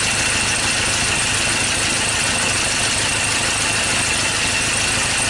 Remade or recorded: recorded